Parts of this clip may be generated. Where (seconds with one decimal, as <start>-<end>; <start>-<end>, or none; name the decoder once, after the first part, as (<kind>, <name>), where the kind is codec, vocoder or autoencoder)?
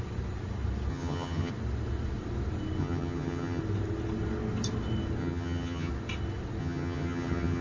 0.9-1.5 (vocoder, HiFi-GAN); 2.8-3.6; 5.2-5.9; 6.6-7.6